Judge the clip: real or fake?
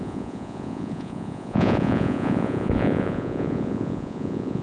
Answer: fake